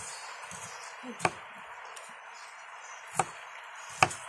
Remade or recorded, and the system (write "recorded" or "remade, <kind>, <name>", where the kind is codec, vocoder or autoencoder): recorded